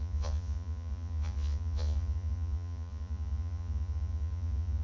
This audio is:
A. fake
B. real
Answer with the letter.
A